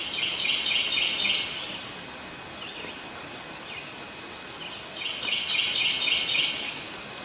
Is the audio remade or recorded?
recorded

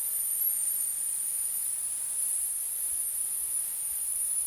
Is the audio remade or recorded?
recorded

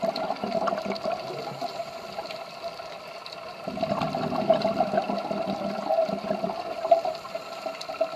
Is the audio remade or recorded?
recorded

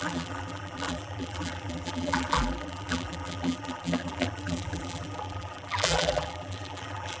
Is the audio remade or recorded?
remade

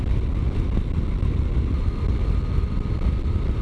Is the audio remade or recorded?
recorded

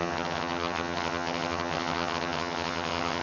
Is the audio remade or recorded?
remade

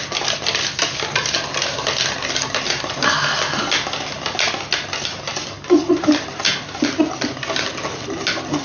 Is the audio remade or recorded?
recorded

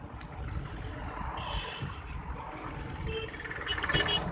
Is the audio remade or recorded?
recorded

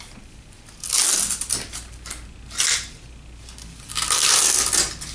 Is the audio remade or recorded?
recorded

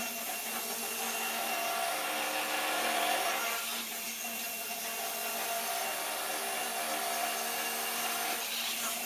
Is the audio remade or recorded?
recorded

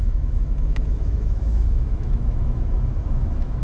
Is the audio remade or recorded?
remade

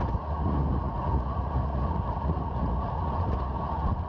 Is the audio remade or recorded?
remade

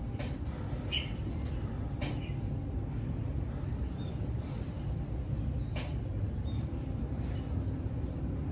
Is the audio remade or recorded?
recorded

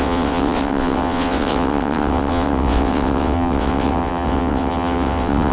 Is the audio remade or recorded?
remade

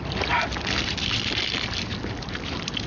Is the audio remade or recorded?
recorded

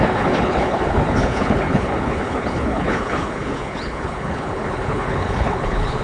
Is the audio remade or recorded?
remade